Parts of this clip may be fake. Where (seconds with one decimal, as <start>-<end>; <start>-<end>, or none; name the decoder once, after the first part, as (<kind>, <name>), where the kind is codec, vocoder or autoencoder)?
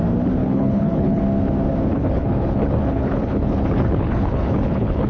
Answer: 0.4-1.2 (codec, HILCodec); 1.9-5.1